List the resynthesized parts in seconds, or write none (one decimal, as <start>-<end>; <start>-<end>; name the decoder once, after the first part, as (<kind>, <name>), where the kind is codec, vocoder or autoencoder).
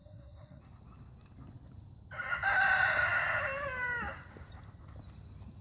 0.0-0.6 (codec, SNAC)